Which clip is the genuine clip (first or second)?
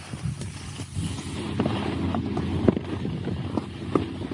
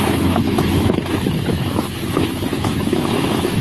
first